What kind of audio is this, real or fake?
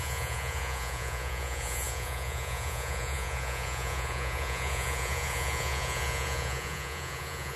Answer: fake